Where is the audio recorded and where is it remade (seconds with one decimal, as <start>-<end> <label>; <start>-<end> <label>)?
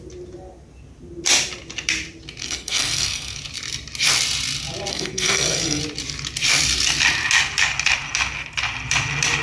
0.0-2.4 recorded; 2.4-3.4 remade; 3.4-4.9 recorded; 4.9-5.8 remade; 5.8-9.4 recorded